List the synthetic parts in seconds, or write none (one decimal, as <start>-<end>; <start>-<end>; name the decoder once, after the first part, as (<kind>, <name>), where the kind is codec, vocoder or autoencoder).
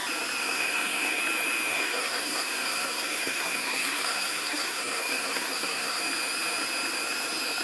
0.4-1.2 (codec, SNAC); 1.7-6.0